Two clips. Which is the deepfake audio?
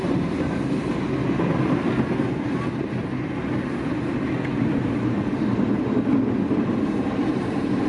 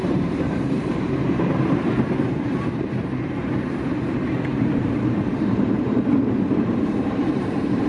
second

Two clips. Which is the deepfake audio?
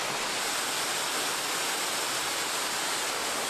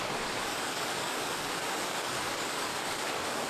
second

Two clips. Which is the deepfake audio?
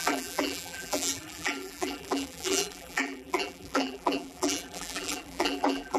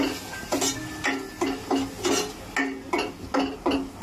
first